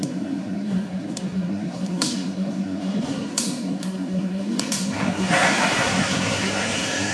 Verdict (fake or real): fake